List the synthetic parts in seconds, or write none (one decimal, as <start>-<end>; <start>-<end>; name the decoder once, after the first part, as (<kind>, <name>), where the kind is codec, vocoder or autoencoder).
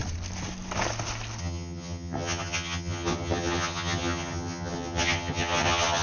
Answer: 1.4-6.0 (vocoder, HiFi-GAN)